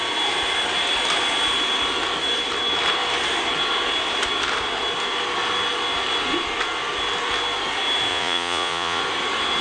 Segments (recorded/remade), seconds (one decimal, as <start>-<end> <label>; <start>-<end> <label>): 0.0-8.1 recorded; 8.1-9.0 remade; 9.0-9.6 recorded